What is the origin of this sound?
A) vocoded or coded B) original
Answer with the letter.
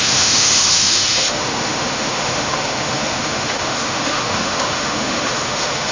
A